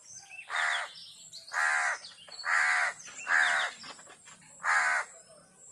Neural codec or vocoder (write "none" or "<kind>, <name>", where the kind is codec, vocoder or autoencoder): none